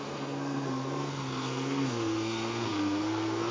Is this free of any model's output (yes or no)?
no